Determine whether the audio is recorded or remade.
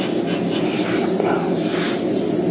recorded